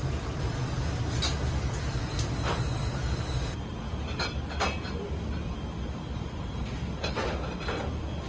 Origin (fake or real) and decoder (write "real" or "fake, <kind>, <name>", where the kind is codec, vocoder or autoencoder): real